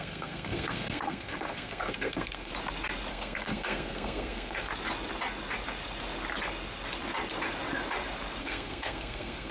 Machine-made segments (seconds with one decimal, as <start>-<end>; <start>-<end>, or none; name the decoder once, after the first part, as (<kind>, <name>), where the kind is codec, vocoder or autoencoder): 0.0-2.5 (codec, SNAC); 3.1-4.7; 8.4-9.5